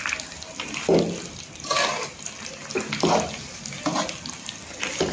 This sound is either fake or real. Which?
real